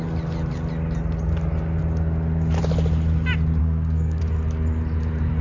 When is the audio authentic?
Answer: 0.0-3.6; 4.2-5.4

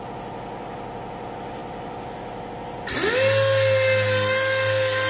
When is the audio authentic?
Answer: 0.0-5.1

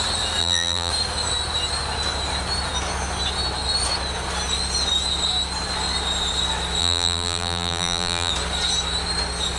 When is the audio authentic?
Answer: 0.0-0.4; 0.9-6.8; 8.3-9.6

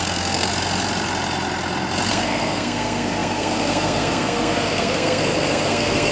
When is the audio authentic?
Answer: 0.5-2.1

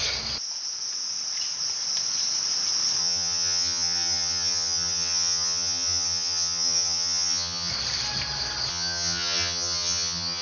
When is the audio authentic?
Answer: 0.0-3.0; 7.7-8.7